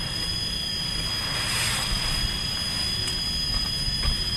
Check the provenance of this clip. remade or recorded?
recorded